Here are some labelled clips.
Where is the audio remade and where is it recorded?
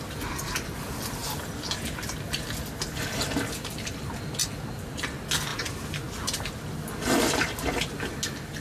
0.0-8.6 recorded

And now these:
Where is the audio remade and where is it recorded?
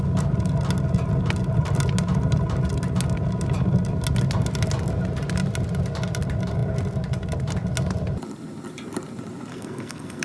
0.0-9.5 recorded; 9.5-10.2 remade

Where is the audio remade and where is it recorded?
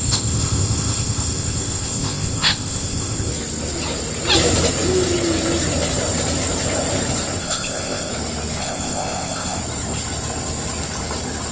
0.0-3.3 remade; 3.3-7.4 recorded; 7.4-8.1 remade; 8.1-8.6 recorded; 8.6-9.6 remade; 9.6-11.5 recorded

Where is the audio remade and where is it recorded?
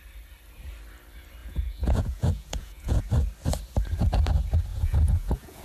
0.0-1.4 recorded; 1.4-3.0 remade; 3.0-4.7 recorded; 4.7-5.6 remade